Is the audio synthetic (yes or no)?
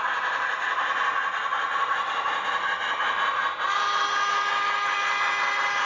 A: no